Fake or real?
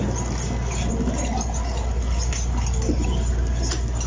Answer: real